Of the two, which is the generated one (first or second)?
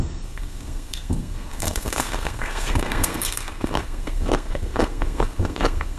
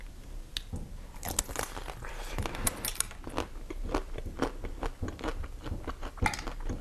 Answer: first